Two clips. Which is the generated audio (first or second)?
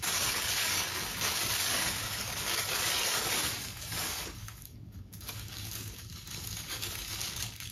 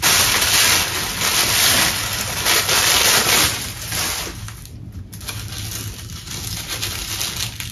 first